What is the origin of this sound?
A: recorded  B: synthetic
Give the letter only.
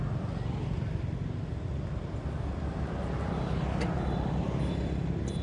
A